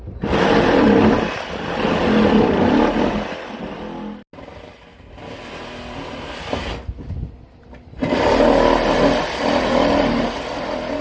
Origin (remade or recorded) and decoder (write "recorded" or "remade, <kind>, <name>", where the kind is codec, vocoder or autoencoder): recorded